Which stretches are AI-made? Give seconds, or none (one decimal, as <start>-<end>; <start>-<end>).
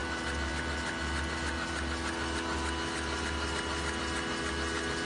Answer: none